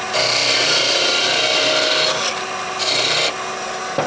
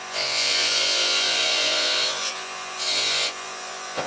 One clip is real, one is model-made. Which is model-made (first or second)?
second